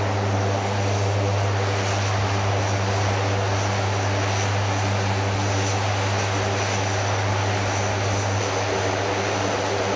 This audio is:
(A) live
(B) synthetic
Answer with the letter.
A